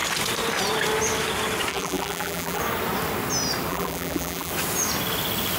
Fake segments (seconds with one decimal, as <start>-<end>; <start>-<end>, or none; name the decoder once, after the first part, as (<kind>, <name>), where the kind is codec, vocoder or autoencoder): 1.7-2.6 (vocoder, BigVGAN v2); 3.7-4.5